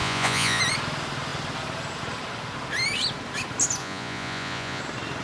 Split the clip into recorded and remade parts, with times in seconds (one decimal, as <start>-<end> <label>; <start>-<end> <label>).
0.0-0.6 remade; 0.6-3.8 recorded; 3.8-4.8 remade; 4.8-5.2 recorded